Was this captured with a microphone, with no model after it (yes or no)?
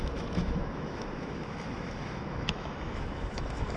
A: no